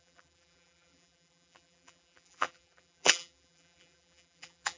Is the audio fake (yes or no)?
yes